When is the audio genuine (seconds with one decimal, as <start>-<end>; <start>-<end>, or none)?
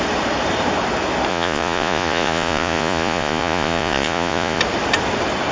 0.0-1.3; 4.6-5.5